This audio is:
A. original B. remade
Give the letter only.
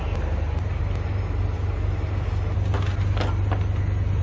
A